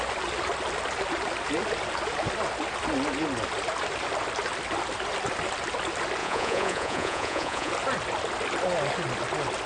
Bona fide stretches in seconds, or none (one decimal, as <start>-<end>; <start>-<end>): 0.0-6.2; 7.7-9.7